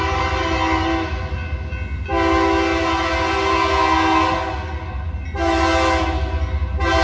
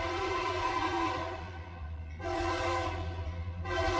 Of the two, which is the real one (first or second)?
first